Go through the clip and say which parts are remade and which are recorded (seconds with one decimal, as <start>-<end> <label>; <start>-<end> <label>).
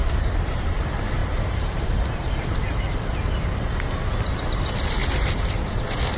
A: 0.0-0.7 remade; 0.7-1.2 recorded; 1.2-2.8 remade; 2.8-5.0 recorded; 5.0-5.8 remade; 5.8-6.2 recorded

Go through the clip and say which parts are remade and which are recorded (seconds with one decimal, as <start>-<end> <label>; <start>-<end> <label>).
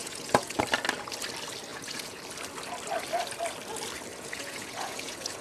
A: 0.0-0.6 remade; 0.6-1.7 recorded; 1.7-2.2 remade; 2.2-4.1 recorded; 4.1-5.4 remade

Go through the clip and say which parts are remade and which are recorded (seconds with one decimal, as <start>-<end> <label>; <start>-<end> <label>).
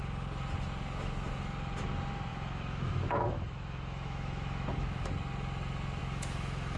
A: 0.0-2.3 recorded; 2.3-5.1 remade; 5.1-6.0 recorded; 6.0-6.8 remade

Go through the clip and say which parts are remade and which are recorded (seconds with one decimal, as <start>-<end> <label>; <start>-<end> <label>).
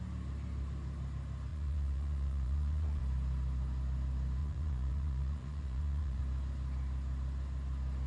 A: 0.0-1.5 recorded; 1.5-3.0 remade; 3.0-4.4 recorded; 4.4-6.2 remade; 6.2-8.1 recorded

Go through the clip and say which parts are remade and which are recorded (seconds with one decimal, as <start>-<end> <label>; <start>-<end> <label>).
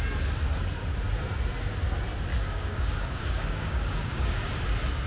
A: 0.0-2.3 recorded; 2.3-4.6 remade; 4.6-5.1 recorded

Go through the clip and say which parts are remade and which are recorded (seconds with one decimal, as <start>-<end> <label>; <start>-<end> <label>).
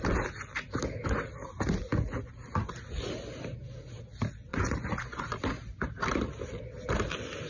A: 0.0-4.5 recorded; 4.5-5.2 remade; 5.2-7.5 recorded